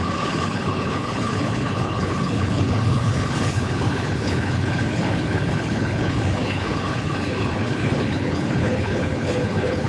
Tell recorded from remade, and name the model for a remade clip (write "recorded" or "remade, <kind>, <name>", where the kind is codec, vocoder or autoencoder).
remade, codec, HILCodec